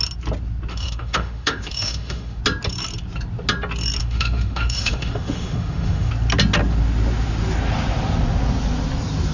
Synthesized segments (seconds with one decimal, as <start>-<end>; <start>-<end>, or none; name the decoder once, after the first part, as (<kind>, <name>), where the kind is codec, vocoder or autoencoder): 0.7-2.4 (autoencoder, DAC-VAE); 4.0-6.1